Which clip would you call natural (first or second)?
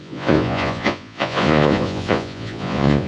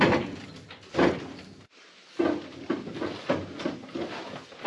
second